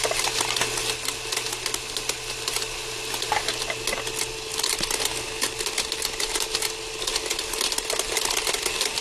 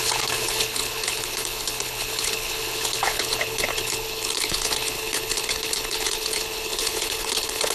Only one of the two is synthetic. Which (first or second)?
second